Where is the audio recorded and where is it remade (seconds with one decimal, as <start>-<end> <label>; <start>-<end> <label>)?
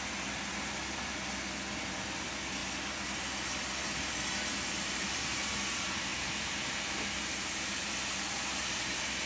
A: 0.0-4.5 recorded; 4.5-5.2 remade; 5.2-6.1 recorded; 6.1-7.9 remade; 7.9-9.3 recorded